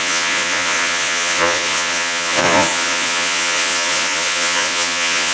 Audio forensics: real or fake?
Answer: fake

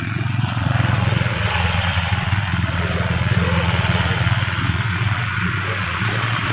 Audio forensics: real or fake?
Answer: fake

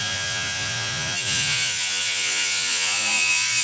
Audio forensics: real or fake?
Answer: fake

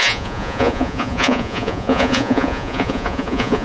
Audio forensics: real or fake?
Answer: fake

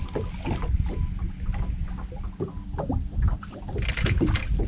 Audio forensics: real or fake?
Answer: real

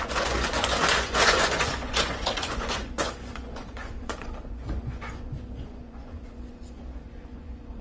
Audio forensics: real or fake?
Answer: fake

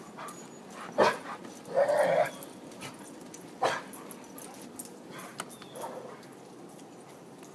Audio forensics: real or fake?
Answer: real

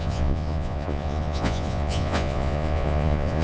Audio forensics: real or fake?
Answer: fake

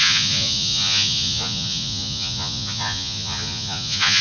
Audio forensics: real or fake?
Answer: fake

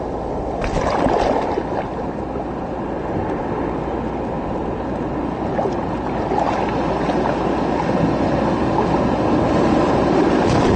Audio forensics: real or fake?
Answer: real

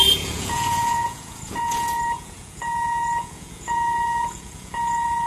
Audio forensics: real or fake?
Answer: fake